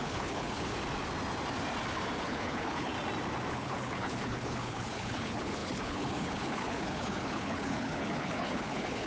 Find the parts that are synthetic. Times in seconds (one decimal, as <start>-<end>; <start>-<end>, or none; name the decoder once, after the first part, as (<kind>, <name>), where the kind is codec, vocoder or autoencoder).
0.0-0.7 (codec, HILCodec); 2.2-2.9; 3.5-9.1